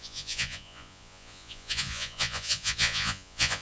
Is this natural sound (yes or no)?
no